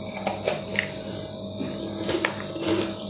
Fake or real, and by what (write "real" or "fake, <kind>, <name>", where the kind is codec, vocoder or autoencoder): real